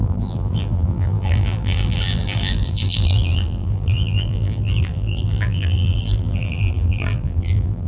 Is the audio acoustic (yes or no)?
no